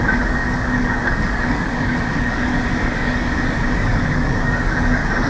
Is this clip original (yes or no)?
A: no